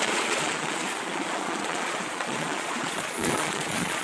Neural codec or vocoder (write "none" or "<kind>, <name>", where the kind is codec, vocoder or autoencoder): vocoder, Vocos